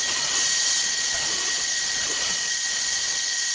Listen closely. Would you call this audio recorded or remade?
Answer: remade